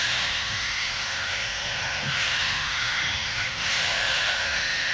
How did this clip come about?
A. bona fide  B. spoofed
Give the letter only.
B